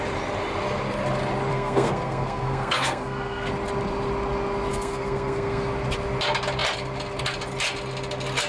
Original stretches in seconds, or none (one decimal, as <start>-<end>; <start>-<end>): 0.0-1.5; 3.5-4.7; 5.6-8.5